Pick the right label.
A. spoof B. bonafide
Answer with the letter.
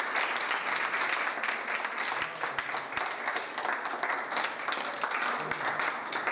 B